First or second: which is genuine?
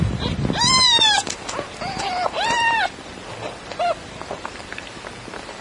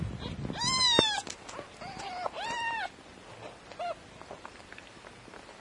second